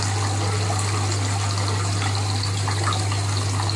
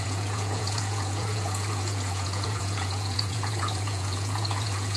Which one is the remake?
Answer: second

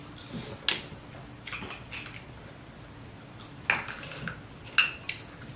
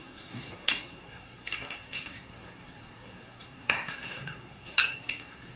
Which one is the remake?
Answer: second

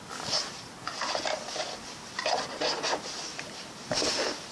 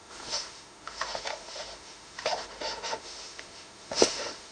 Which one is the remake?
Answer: second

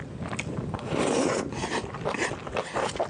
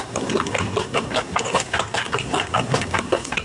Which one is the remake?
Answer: second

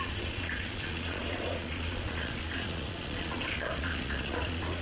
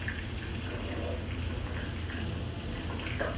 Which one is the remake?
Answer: first